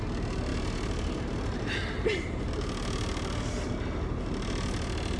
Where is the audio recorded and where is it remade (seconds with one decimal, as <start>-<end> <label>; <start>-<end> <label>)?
0.0-0.5 recorded; 0.5-2.5 remade; 2.5-5.2 recorded